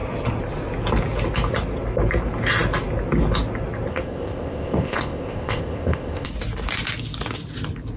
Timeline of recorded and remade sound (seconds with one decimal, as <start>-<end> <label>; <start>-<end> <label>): 0.0-3.9 recorded; 3.9-6.3 remade; 6.3-8.0 recorded